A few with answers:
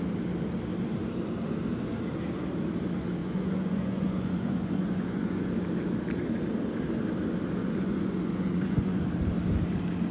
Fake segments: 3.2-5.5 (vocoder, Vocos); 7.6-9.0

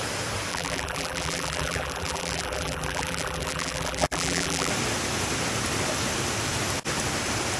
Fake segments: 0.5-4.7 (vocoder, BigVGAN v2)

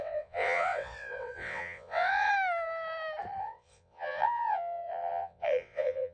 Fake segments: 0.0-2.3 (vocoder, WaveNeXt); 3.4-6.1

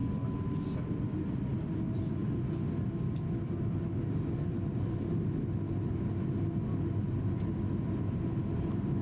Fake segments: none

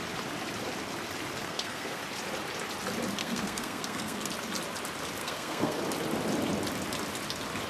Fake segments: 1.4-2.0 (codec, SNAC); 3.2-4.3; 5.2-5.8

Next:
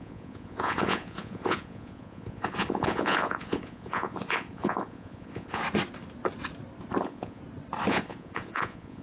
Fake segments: 0.0-5.6 (vocoder, Vocos); 7.0-7.4; 7.9-9.0